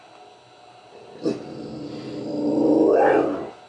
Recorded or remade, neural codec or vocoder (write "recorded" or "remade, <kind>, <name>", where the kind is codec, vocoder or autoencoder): recorded